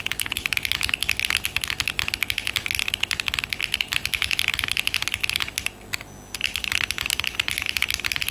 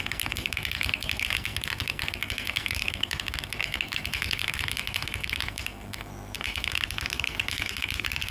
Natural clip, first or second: first